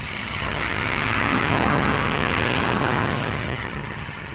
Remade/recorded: remade